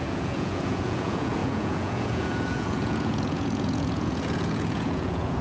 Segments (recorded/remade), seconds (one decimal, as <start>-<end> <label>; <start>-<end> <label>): 0.0-5.4 remade